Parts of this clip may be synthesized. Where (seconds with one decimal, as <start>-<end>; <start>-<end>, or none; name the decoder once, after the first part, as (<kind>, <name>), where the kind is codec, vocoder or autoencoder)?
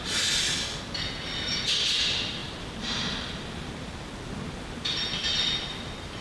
none